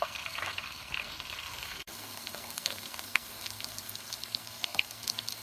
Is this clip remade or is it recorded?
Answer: remade